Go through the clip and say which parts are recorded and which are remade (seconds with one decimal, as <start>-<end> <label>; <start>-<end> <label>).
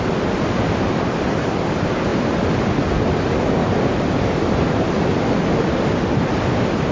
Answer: 0.0-3.6 recorded; 3.6-5.3 remade; 5.3-6.9 recorded